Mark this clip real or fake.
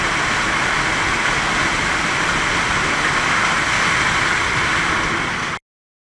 real